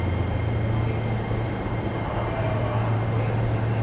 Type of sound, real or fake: real